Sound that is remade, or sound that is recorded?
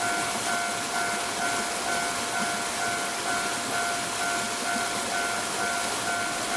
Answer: recorded